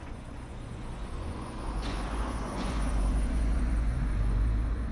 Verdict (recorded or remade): remade